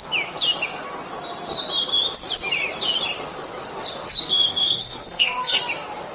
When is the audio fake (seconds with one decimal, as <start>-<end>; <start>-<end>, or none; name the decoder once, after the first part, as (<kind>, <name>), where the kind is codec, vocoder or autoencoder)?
4.2-5.6 (codec, SNAC)